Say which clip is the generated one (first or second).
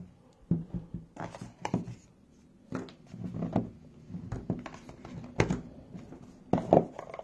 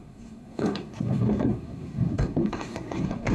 second